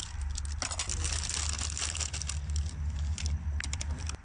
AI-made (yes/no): no